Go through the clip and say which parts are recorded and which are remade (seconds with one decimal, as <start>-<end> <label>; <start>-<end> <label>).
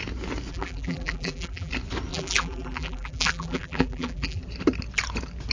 0.0-0.5 recorded; 0.5-1.7 remade; 1.7-2.1 recorded; 2.1-4.4 remade; 4.4-5.5 recorded